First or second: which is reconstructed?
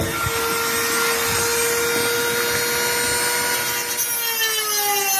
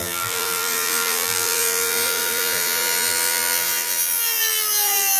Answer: second